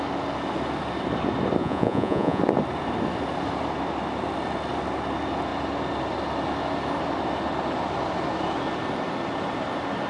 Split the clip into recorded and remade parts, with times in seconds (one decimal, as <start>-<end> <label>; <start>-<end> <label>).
0.0-1.6 recorded; 1.6-2.4 remade; 2.4-10.1 recorded